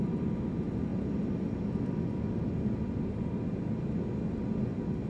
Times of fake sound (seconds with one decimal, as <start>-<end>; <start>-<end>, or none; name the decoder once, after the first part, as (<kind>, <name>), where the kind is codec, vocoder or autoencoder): none